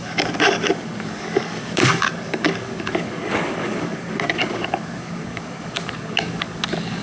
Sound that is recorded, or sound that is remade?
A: remade